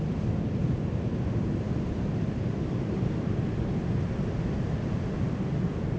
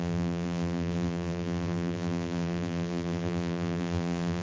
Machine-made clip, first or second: second